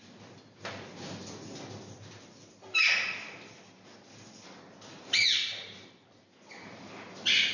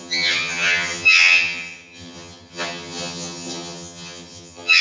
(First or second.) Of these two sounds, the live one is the first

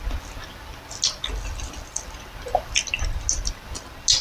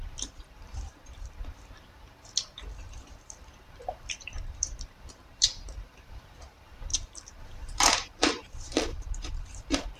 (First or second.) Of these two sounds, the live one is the first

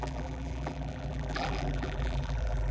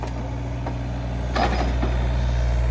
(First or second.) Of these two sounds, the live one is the second